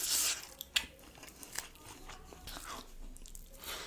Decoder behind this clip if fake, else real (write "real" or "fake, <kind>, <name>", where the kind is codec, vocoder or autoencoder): real